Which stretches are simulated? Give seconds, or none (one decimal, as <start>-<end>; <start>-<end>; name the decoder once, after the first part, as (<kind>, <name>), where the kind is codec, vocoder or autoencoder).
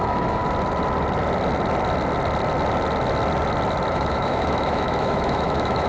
0.0-0.4 (autoencoder, DAC-VAE); 3.9-5.9